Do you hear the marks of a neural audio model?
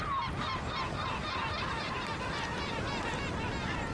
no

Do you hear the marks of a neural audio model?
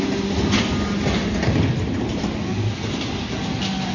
no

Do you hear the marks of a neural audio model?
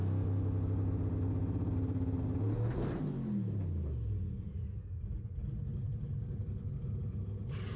no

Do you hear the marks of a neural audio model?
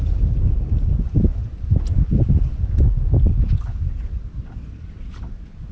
no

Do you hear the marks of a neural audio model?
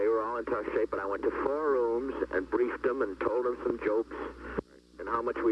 no